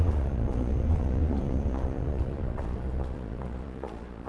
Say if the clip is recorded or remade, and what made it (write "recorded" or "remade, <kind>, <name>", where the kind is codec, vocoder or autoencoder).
remade, vocoder, Vocos